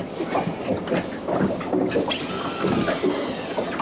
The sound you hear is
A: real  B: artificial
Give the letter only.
A